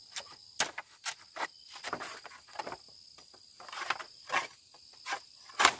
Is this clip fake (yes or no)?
no